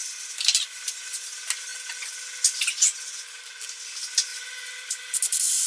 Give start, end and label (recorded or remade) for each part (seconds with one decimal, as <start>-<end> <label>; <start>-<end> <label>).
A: 0.0-0.9 remade; 0.9-4.3 recorded; 4.3-5.7 remade